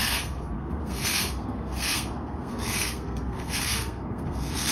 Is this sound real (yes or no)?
no